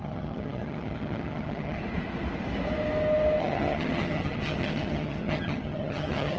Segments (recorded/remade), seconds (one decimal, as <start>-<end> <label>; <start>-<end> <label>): 0.0-1.8 remade; 1.8-3.4 recorded; 3.4-6.4 remade